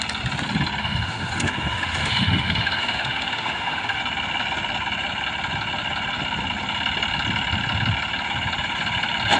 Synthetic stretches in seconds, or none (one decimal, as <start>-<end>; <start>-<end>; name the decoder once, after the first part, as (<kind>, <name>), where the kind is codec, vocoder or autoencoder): 0.8-4.0 (autoencoder, DAC-VAE)